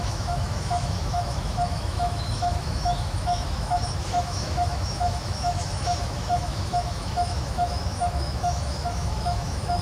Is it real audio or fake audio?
fake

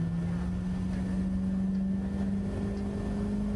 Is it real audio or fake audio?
real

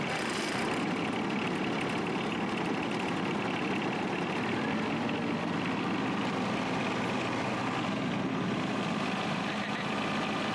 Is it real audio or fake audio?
fake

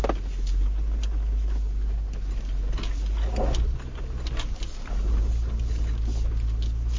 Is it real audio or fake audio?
real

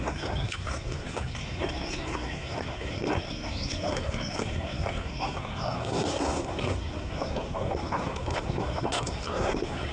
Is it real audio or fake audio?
fake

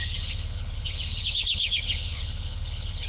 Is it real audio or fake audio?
fake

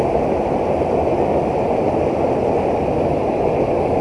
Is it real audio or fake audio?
real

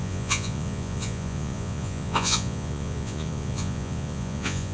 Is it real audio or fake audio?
fake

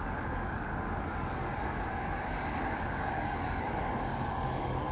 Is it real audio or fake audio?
fake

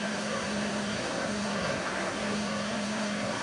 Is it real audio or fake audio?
fake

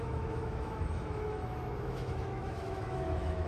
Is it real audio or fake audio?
fake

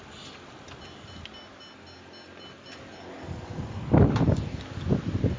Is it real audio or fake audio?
real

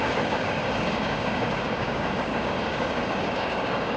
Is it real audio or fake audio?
fake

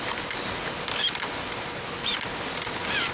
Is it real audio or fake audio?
real